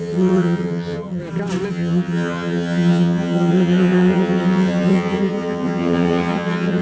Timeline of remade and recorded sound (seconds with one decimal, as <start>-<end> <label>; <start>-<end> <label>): 0.0-1.2 remade; 1.2-1.7 recorded; 1.7-6.8 remade

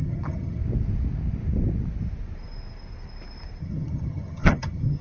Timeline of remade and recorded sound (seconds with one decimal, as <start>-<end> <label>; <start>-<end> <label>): 0.0-0.6 remade; 0.6-3.6 recorded; 3.6-5.0 remade

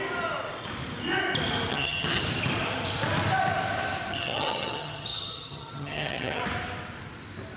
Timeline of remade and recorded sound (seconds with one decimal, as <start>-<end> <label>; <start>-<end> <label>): 0.0-1.7 recorded; 1.7-2.2 remade; 2.2-4.1 recorded; 4.1-6.4 remade; 6.4-7.6 recorded